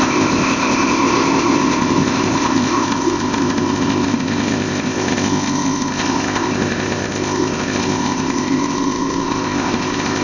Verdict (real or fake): fake